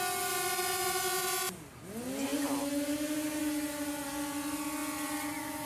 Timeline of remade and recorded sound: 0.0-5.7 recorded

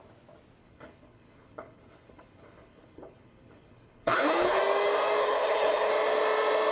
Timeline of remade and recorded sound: 0.0-0.6 recorded; 0.6-4.6 remade; 4.6-5.2 recorded; 5.2-5.9 remade; 5.9-6.7 recorded

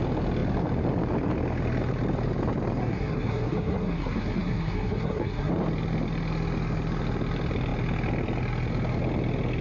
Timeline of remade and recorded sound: 0.0-2.8 recorded; 2.8-5.5 remade; 5.5-9.6 recorded

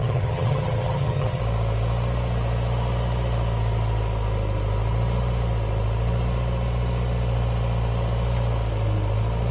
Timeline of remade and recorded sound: 0.0-1.4 remade; 1.4-9.5 recorded

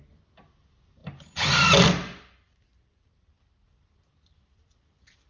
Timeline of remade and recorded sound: 0.0-5.3 recorded

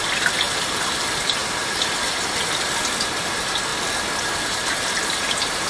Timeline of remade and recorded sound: 0.0-5.7 recorded

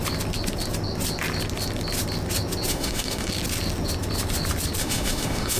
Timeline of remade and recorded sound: 0.0-2.7 recorded; 2.7-3.3 remade; 3.3-4.8 recorded; 4.8-5.6 remade